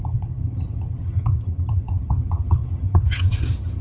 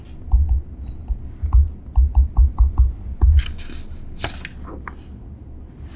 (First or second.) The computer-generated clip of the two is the first